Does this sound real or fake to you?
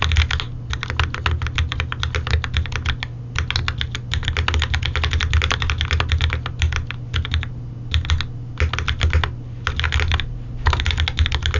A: real